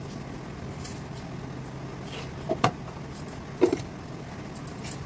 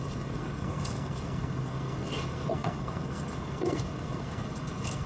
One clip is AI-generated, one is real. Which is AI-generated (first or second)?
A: second